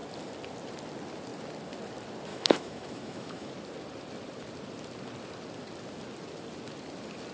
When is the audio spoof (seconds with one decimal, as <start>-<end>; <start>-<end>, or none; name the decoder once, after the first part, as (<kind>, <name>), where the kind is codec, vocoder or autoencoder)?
2.3-3.5 (autoencoder, DAC-VAE)